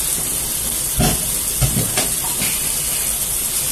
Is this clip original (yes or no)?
yes